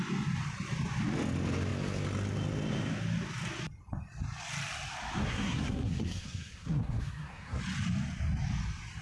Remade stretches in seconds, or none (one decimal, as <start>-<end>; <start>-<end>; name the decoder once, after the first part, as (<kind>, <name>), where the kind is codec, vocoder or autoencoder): 5.2-7.6 (codec, SNAC)